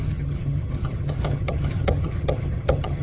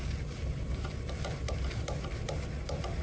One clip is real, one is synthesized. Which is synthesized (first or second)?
first